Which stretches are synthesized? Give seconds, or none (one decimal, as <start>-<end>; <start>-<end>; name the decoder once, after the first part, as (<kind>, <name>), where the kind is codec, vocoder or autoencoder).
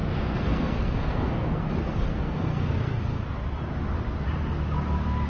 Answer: 0.0-3.2 (codec, SNAC)